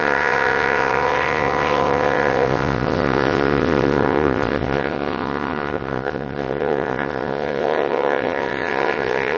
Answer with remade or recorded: remade